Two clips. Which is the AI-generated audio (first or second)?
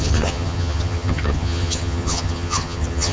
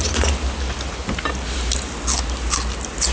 first